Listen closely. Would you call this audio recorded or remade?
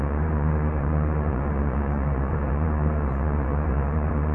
remade